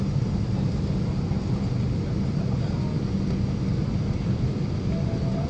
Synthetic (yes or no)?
no